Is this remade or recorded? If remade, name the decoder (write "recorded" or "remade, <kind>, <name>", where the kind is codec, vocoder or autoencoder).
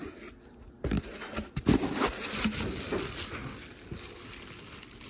recorded